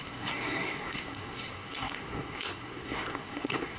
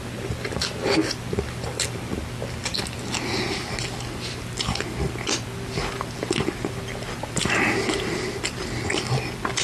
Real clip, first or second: second